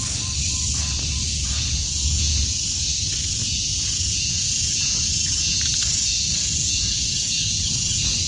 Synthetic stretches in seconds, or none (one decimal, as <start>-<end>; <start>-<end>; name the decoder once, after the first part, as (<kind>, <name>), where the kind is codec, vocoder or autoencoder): 1.2-2.6 (vocoder, Vocos); 3.4-8.3